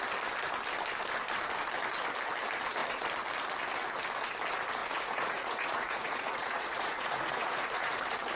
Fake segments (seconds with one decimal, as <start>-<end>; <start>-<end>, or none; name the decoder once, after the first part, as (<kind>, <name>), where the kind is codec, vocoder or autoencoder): 4.8-8.0 (vocoder, Vocos)